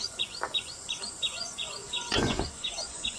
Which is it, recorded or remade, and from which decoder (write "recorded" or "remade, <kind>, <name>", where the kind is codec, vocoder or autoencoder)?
remade, vocoder, Vocos